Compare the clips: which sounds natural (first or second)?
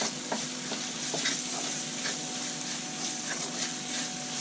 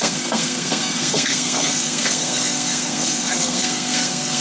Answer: first